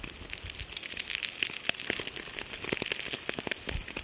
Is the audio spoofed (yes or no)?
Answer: no